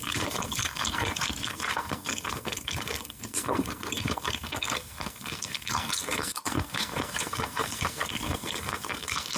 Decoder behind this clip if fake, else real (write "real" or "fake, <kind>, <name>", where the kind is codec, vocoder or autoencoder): fake, codec, SNAC